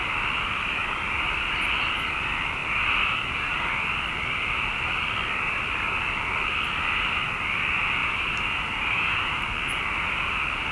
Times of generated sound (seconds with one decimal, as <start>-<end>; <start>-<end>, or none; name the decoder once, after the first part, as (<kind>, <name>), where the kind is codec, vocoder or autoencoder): 0.8-1.4 (vocoder, BigVGAN v2); 8.0-9.3